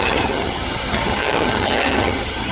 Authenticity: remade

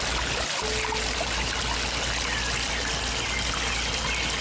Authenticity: recorded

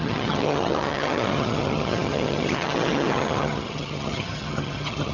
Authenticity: remade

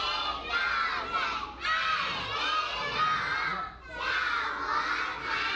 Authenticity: recorded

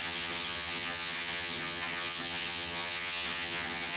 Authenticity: remade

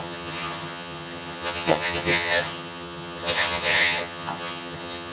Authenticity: remade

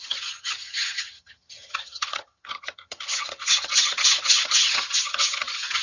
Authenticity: remade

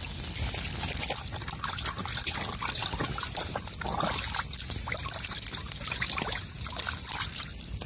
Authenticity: recorded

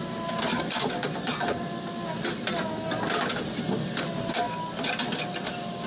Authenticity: recorded